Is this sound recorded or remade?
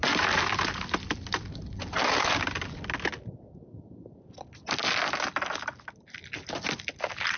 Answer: recorded